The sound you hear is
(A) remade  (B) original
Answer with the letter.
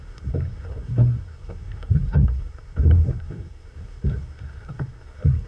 A